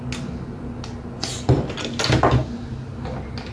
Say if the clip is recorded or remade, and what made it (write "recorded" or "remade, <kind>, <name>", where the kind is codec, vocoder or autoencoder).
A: recorded